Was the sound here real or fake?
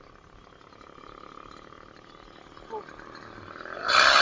real